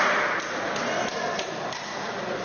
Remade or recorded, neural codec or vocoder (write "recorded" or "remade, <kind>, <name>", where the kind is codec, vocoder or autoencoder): recorded